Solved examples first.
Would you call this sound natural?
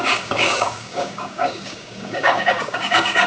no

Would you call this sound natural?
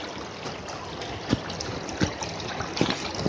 yes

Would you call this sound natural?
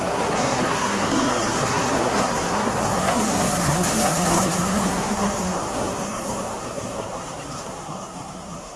no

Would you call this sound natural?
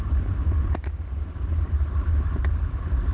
no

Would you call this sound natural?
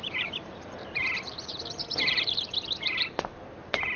no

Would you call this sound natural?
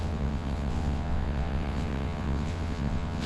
no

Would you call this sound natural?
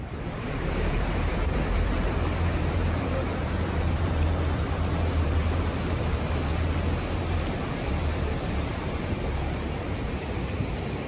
no